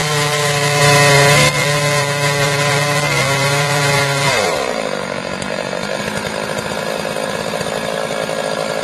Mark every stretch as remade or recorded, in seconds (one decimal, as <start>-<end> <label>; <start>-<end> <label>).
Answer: 0.0-0.8 remade; 0.8-1.5 recorded; 1.5-6.0 remade; 6.0-8.8 recorded